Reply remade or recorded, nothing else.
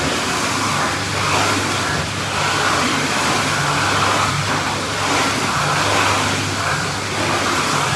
recorded